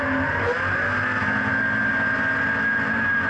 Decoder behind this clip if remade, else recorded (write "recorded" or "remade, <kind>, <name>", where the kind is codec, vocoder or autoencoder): recorded